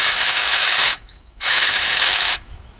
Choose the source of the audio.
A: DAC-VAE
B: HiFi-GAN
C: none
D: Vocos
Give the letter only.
A